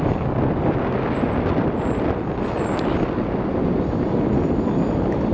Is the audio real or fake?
real